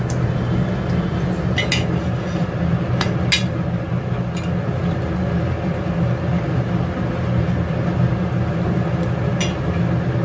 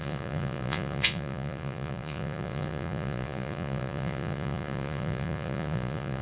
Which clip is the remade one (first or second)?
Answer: second